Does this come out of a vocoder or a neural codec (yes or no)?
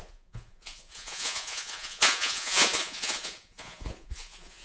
yes